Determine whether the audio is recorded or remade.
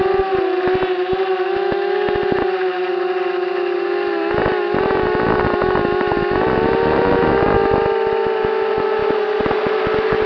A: recorded